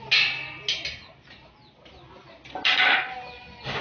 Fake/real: real